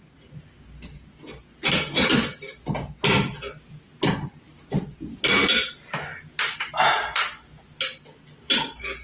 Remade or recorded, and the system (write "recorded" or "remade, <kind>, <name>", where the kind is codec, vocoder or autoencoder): recorded